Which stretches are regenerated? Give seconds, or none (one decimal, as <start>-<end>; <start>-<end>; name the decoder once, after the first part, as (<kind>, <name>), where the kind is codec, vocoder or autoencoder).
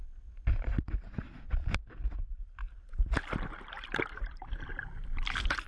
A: 2.6-5.7 (vocoder, BigVGAN v2)